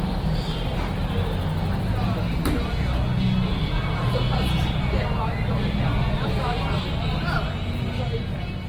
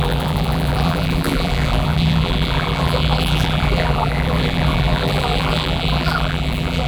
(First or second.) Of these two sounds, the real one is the first